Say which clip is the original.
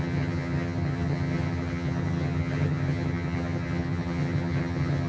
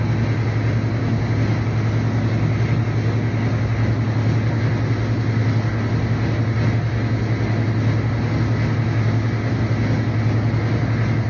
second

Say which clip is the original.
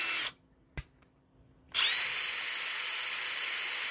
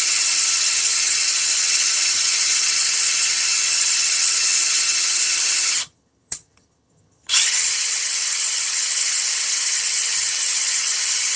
first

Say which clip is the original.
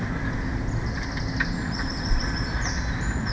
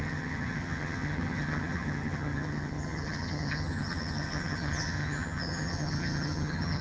first